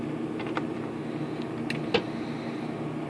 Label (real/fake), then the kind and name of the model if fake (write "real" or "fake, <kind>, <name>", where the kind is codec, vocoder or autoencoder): real